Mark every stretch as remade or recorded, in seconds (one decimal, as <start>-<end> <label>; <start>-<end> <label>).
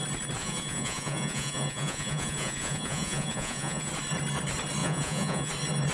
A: 0.0-0.4 recorded; 0.4-3.9 remade; 3.9-4.8 recorded; 4.8-5.5 remade; 5.5-5.9 recorded